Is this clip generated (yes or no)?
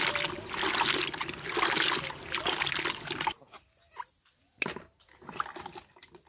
no